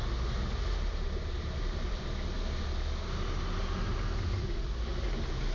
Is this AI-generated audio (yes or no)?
no